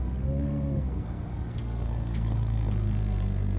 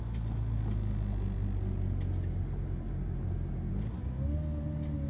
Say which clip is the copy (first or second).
first